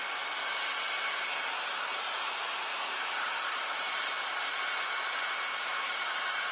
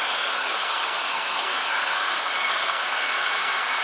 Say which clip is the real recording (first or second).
first